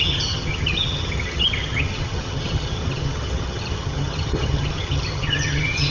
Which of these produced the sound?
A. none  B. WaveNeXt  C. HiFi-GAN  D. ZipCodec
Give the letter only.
C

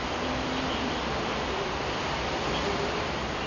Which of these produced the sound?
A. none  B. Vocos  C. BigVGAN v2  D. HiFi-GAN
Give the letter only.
A